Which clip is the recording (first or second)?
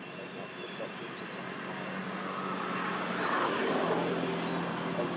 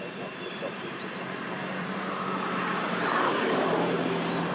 first